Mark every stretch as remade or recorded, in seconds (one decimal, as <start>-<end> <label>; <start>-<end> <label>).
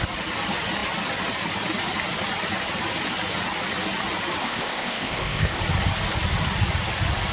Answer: 0.0-4.4 recorded; 4.4-5.6 remade; 5.6-7.3 recorded